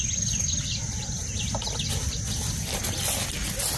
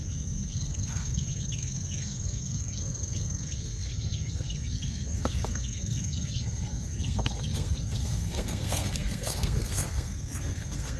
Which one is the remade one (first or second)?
second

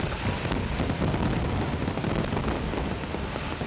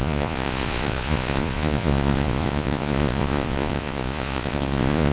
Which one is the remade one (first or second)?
second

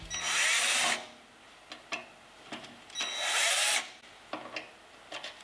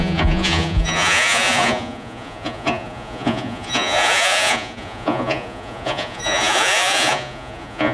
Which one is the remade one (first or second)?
second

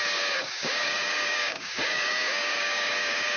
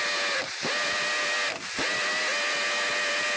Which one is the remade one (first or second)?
first